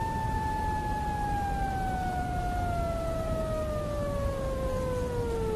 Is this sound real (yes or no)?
yes